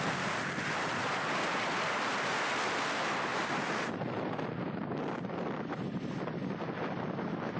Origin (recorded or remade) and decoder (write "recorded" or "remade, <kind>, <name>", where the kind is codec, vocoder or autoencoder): recorded